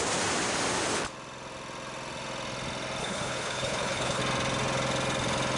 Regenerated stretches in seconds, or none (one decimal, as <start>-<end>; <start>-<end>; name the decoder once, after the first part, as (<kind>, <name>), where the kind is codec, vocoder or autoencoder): 3.0-4.2 (codec, HILCodec)